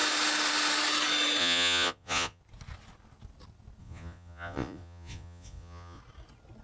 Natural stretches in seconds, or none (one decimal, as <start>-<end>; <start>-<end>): 0.0-1.4; 2.4-3.8; 6.0-6.6